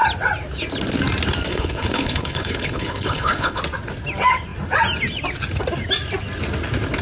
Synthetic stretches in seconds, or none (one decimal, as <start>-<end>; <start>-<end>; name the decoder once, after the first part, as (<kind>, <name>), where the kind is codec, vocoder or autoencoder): 1.5-3.6 (codec, HILCodec)

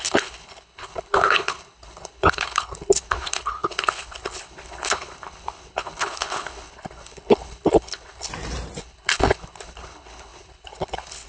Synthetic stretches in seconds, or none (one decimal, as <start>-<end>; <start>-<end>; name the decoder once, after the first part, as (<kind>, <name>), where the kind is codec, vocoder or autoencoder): 0.0-8.3 (codec, HILCodec); 8.8-11.3

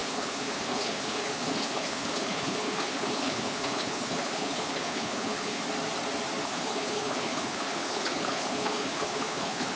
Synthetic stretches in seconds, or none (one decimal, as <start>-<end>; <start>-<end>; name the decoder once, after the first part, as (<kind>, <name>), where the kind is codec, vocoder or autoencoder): 0.0-5.6 (codec, HILCodec); 6.4-9.8

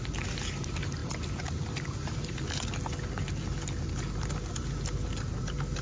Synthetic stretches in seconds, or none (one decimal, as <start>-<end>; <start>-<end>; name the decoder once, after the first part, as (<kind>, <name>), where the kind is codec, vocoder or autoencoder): none

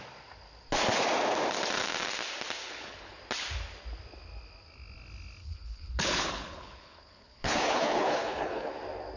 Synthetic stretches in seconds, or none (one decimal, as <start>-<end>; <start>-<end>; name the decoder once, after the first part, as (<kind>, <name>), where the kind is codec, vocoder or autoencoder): 2.6-3.2 (codec, HILCodec); 5.4-8.7

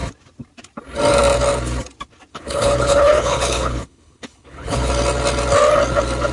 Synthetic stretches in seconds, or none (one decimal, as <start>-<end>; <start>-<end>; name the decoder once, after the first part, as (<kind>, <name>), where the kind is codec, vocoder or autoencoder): 2.3-4.9 (codec, HILCodec)